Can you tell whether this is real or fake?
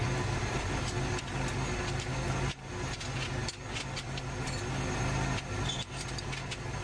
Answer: real